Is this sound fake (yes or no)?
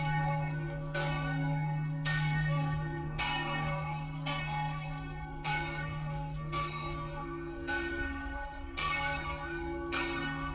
yes